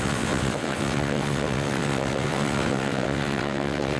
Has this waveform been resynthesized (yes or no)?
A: yes